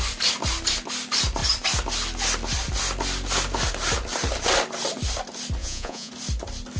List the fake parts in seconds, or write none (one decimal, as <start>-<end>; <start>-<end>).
5.6-6.1